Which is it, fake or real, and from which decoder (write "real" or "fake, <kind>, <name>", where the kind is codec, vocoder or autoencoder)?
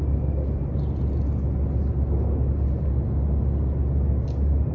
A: real